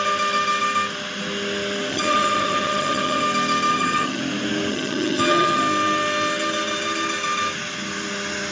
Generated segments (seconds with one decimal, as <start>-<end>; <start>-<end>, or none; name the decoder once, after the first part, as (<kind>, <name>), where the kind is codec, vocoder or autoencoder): 1.9-3.2 (vocoder, HiFi-GAN); 3.7-4.2; 4.7-5.6